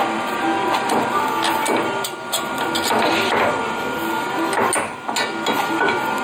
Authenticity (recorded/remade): recorded